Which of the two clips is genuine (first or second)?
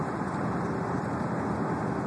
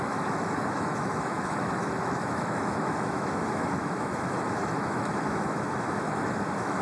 first